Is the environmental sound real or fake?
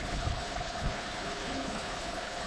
fake